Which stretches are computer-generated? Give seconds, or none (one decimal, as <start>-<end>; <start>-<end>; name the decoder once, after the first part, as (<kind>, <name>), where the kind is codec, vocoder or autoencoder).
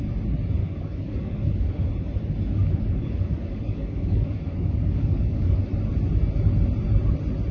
0.6-1.9 (codec, DAC); 2.6-5.6